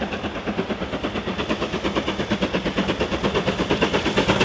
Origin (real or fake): real